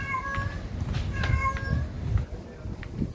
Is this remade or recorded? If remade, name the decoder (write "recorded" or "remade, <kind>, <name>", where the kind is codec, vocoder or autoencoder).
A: recorded